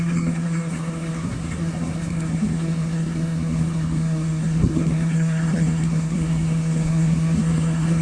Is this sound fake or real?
fake